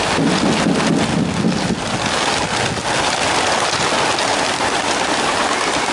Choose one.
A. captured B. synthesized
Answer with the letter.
A